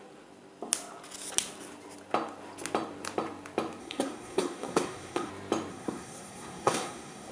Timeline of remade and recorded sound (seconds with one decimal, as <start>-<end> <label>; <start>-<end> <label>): 0.0-3.8 recorded; 3.8-5.3 remade; 5.3-5.7 recorded; 5.7-7.3 remade